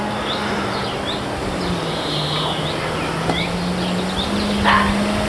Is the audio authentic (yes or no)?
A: yes